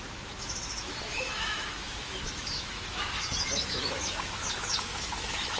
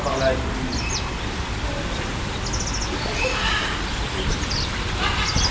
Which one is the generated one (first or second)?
first